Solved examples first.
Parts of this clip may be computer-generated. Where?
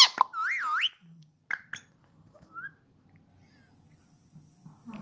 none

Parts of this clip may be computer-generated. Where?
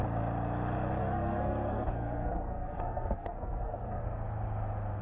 1.0-4.0 (codec, SNAC)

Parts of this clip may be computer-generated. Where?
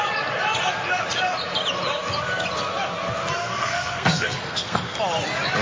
3.4-5.0 (codec, SNAC)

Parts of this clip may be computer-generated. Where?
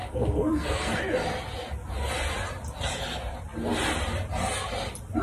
0.0-1.0 (codec, SNAC)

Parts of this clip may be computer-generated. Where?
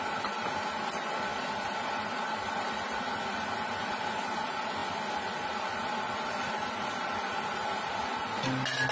none